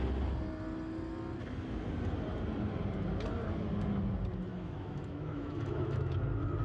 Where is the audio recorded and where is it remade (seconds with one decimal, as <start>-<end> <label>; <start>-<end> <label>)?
0.0-4.5 recorded; 4.5-6.1 remade; 6.1-6.6 recorded